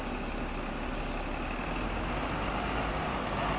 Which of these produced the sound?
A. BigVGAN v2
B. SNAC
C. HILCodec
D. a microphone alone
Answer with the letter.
D